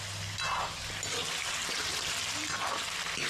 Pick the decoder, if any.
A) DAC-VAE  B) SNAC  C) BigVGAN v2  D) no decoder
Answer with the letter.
D